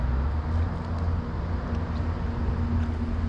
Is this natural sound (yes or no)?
yes